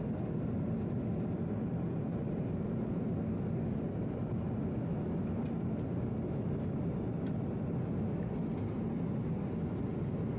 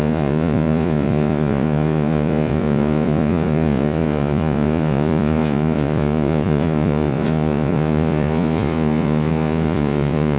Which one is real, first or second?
first